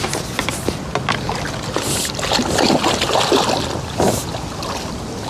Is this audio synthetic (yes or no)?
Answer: no